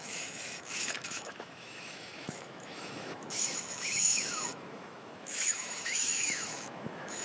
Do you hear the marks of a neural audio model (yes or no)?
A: yes